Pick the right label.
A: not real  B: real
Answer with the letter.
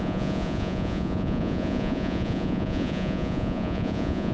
A